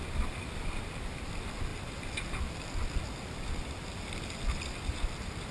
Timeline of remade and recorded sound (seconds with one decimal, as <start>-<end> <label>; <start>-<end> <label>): 0.0-5.5 recorded